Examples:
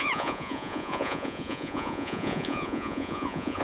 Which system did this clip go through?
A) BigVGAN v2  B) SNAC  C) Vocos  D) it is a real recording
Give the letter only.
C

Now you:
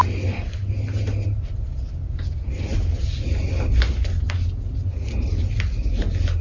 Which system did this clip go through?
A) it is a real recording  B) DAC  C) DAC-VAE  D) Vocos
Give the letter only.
A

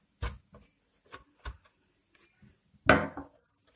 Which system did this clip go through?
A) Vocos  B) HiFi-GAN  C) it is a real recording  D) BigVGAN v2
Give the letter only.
C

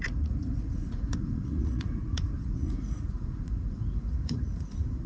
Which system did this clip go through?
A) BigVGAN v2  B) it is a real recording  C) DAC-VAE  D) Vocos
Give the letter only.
D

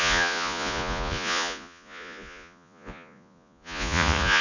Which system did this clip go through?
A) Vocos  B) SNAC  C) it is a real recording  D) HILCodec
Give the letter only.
A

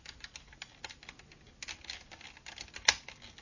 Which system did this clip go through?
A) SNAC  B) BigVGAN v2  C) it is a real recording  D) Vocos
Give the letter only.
C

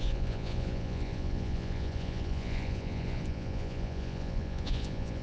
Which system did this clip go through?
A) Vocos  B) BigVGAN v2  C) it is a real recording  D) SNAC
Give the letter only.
A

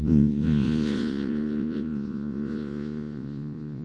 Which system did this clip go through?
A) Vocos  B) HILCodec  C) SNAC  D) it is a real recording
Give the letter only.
A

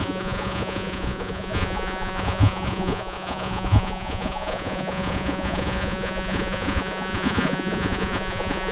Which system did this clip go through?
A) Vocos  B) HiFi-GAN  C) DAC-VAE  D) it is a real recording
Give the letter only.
A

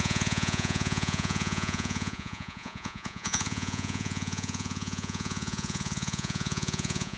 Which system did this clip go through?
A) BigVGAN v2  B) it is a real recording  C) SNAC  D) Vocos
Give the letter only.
D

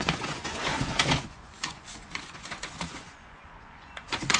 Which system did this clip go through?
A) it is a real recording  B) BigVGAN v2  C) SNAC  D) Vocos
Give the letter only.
D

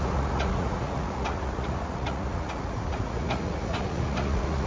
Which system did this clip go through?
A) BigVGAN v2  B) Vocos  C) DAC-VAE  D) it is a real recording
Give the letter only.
B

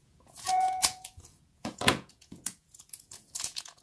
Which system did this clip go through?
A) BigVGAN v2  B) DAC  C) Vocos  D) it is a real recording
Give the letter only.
C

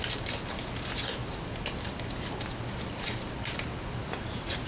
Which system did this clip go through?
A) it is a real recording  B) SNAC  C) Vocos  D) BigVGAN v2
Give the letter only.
A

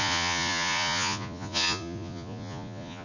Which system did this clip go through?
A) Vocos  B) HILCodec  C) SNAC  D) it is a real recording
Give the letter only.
A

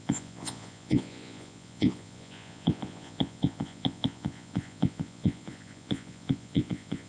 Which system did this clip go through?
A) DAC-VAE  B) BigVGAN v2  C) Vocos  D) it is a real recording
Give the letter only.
C